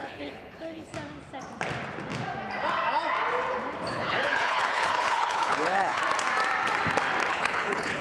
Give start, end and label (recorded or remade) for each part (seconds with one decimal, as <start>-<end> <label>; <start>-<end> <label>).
0.0-0.9 remade; 0.9-3.9 recorded; 3.9-6.0 remade; 6.0-7.3 recorded; 7.3-8.0 remade